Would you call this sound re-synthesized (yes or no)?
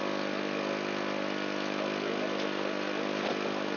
no